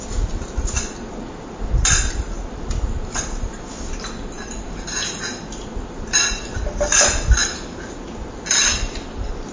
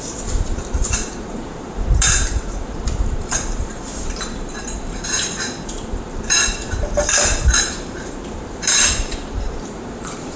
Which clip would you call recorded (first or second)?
first